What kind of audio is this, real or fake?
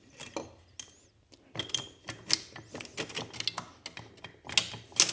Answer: real